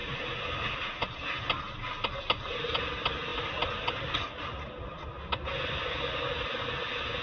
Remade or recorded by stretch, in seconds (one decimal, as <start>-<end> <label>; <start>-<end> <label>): 0.0-7.2 recorded